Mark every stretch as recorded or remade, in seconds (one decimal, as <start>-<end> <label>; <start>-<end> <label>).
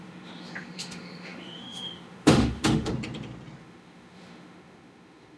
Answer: 0.0-2.9 remade; 2.9-3.6 recorded; 3.6-5.4 remade